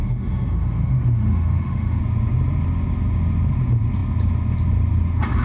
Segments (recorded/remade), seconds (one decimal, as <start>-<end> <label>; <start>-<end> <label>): 0.0-2.0 remade; 2.0-5.4 recorded